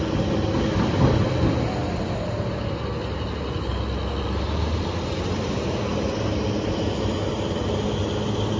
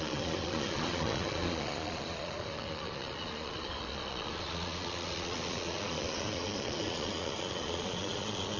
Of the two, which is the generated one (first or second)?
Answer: second